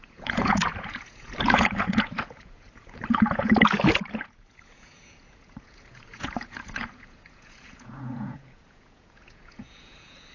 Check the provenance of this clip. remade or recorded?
remade